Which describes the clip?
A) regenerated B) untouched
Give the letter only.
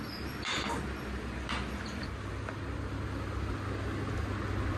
B